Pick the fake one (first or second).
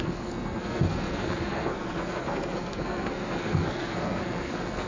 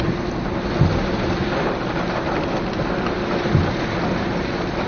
first